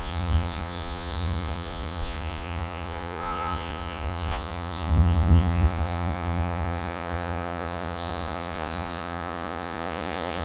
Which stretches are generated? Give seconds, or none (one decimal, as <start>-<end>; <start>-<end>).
0.0-10.4